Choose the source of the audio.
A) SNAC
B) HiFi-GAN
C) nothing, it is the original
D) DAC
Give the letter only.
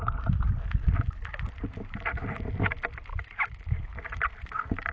C